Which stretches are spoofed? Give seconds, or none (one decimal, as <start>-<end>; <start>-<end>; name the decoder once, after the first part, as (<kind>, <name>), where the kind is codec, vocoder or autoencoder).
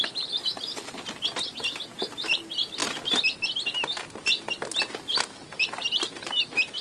none